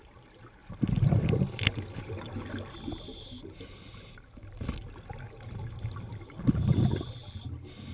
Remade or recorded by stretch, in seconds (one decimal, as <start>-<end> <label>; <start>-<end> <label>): 0.0-7.9 recorded